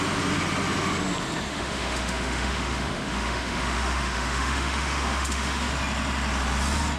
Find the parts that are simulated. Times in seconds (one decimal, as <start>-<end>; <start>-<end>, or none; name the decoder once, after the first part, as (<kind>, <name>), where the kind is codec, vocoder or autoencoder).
1.5-5.7 (autoencoder, DAC-VAE)